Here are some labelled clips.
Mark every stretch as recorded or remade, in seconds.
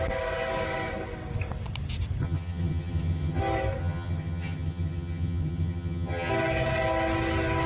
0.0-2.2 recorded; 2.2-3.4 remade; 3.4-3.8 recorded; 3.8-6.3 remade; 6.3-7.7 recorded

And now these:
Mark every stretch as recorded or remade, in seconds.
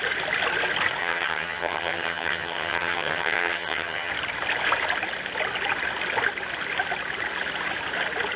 0.0-1.0 recorded; 1.0-4.1 remade; 4.1-8.4 recorded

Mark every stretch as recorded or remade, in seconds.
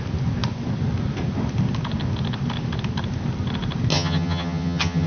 0.0-3.9 recorded; 3.9-5.1 remade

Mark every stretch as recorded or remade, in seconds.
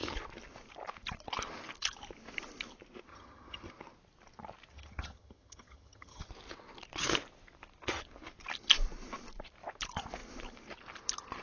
0.0-3.1 recorded; 3.1-3.7 remade; 3.7-4.7 recorded; 4.7-6.3 remade; 6.3-11.4 recorded